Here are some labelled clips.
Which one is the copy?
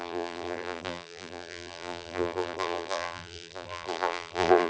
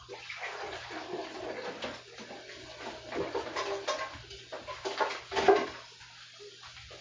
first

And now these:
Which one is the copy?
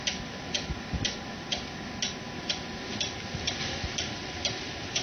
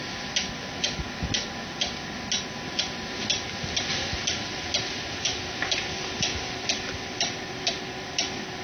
first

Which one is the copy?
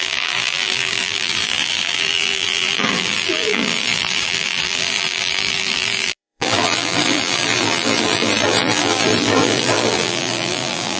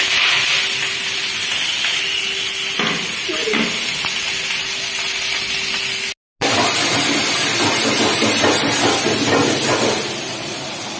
first